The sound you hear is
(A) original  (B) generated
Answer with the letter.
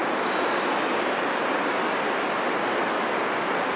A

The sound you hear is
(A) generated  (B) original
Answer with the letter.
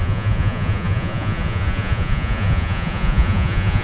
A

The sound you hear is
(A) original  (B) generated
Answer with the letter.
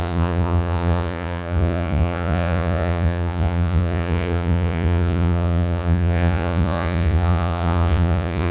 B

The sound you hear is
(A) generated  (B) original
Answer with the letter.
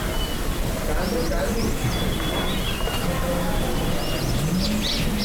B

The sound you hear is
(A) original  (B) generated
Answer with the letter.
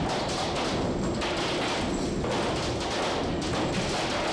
A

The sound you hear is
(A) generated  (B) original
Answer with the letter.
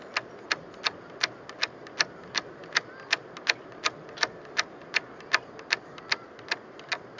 B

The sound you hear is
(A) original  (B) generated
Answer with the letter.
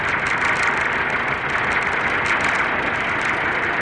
A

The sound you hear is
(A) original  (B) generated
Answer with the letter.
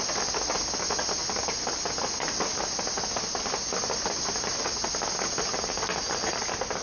A